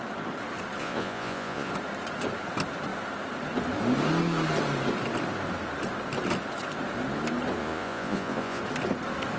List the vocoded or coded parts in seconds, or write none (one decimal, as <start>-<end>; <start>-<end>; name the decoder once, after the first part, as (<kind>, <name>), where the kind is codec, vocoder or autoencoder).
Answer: 0.8-1.7 (vocoder, Vocos); 7.6-8.6